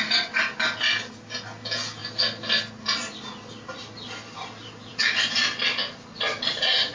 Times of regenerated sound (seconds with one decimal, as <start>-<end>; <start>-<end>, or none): none